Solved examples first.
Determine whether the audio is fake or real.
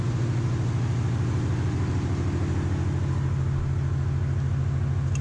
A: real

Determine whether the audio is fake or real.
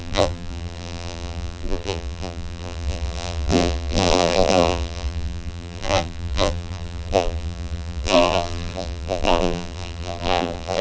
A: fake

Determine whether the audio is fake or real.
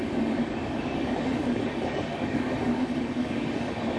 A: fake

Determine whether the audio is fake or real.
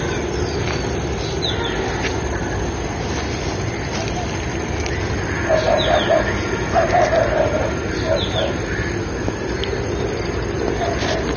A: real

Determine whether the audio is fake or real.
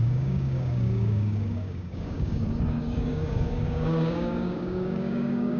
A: fake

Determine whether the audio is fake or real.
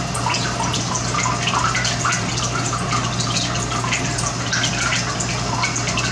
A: real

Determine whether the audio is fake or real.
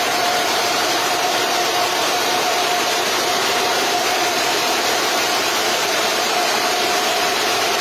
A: fake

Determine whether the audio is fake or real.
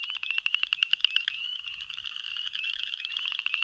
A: fake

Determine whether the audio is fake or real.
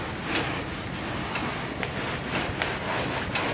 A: real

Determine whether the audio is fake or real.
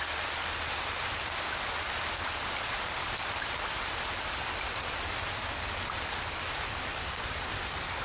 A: real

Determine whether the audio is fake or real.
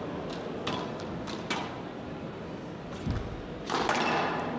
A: real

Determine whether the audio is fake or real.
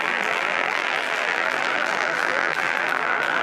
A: fake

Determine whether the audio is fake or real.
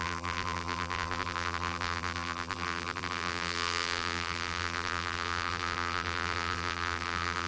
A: fake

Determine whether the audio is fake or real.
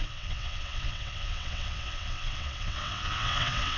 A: fake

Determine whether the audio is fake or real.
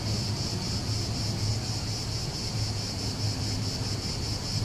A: real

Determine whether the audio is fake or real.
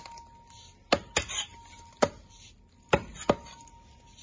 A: real